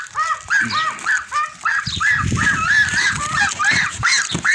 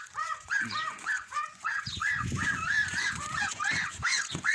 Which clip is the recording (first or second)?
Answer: first